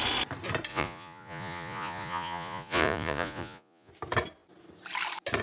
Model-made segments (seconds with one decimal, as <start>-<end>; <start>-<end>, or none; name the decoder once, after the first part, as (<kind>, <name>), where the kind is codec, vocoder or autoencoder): 0.7-3.9 (vocoder, Vocos)